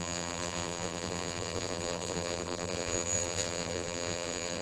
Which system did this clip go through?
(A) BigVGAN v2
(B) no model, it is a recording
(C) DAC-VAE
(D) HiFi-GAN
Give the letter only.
A